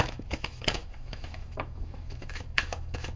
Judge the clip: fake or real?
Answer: fake